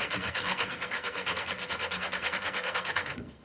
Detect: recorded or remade remade